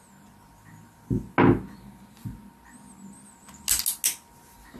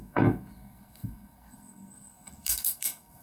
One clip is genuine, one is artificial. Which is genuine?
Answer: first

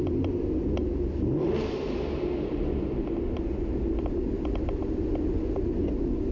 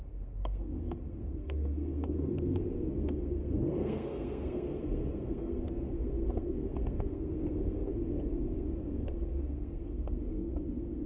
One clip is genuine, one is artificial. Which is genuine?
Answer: first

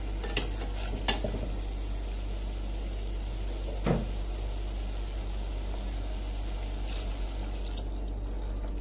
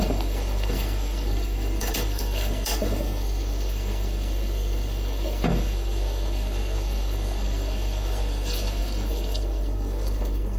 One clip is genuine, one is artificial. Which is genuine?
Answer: first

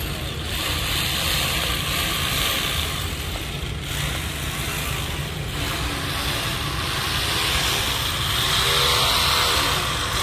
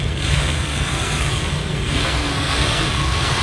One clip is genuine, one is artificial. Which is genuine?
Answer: first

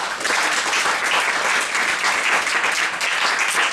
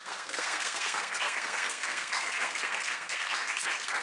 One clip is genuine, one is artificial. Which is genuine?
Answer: first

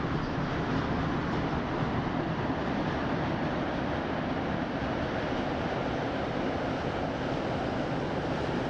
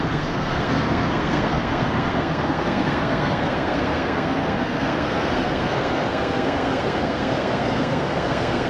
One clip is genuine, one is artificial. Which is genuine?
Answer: first